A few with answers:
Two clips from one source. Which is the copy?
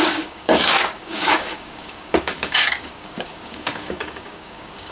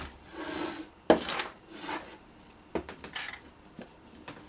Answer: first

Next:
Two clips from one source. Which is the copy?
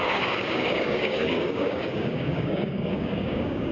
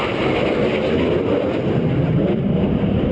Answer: first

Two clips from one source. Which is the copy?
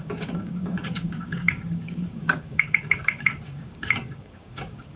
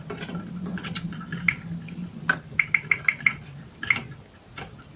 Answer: first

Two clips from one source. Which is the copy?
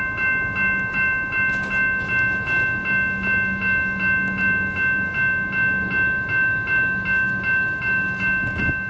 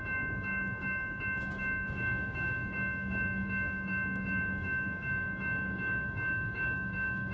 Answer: second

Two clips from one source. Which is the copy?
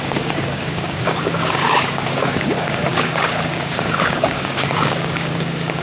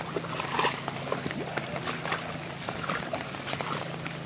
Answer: first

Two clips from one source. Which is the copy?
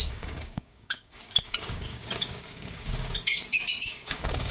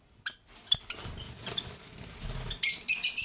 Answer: first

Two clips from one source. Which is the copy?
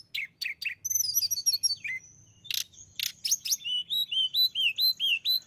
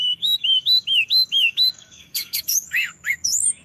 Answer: second